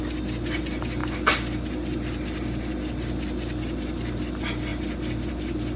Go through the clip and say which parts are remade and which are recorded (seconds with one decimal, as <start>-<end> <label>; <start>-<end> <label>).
0.0-5.8 recorded